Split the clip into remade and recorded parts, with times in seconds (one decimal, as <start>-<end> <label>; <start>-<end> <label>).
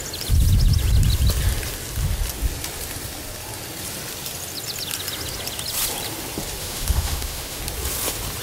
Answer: 0.0-6.6 recorded; 6.6-7.6 remade; 7.6-8.4 recorded